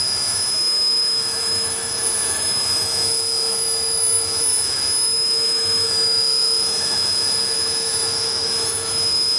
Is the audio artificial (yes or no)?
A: yes